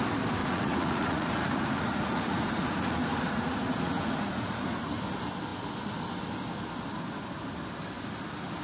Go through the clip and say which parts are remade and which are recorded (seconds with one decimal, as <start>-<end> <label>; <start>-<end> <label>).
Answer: 0.0-0.4 recorded; 0.4-5.0 remade; 5.0-8.6 recorded